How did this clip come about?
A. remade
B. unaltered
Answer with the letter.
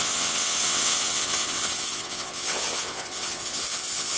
A